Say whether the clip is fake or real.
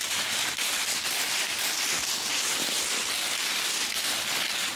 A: real